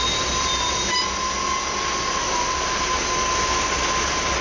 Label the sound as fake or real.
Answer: real